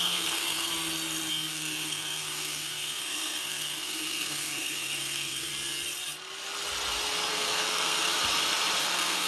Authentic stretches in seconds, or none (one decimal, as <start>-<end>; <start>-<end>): 0.7-1.3; 5.5-7.3; 8.1-8.8